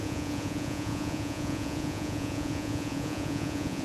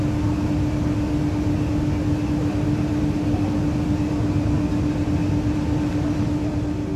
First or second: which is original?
second